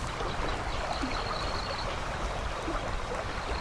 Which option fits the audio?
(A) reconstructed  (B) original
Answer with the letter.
B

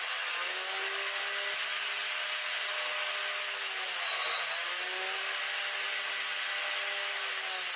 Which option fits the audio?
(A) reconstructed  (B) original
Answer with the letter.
B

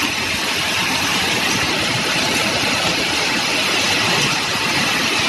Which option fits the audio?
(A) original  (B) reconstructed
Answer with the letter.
A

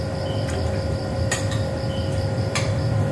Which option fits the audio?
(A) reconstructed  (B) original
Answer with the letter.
A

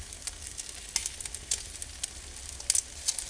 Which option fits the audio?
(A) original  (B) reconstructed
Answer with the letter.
A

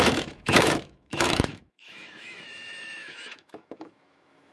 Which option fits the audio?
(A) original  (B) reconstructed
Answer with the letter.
B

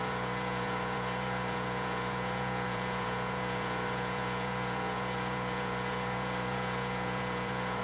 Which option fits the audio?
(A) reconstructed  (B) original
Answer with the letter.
A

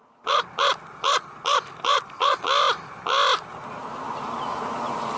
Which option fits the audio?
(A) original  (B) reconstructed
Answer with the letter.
A